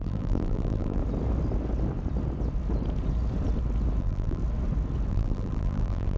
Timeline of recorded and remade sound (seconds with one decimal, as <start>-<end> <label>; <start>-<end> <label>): 0.0-1.0 remade; 1.0-4.0 recorded; 4.0-4.4 remade; 4.4-5.1 recorded; 5.1-6.2 remade